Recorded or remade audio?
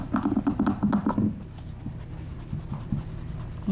recorded